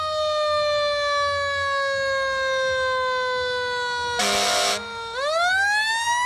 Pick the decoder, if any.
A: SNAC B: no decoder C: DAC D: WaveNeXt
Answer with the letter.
B